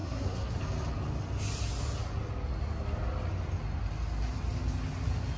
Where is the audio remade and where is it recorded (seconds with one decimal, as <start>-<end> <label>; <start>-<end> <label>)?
0.0-0.6 remade; 0.6-5.4 recorded